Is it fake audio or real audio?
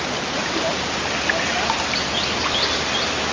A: real